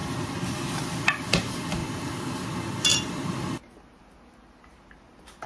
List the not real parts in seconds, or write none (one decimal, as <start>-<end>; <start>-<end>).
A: 1.8-2.5; 2.9-3.5